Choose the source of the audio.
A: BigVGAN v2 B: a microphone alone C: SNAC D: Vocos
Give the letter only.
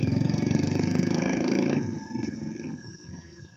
C